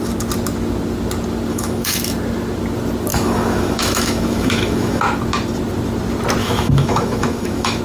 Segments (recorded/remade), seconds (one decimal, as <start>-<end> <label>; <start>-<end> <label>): 0.0-1.5 recorded; 1.5-2.0 remade; 2.0-3.1 recorded; 3.1-5.0 remade; 5.0-6.4 recorded; 6.4-7.8 remade